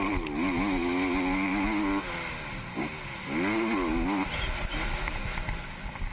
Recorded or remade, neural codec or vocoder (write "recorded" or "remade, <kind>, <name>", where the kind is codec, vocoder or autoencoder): recorded